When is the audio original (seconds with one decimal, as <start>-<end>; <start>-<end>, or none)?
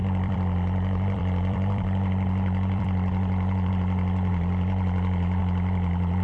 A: 4.3-5.4